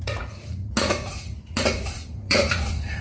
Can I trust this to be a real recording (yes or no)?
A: no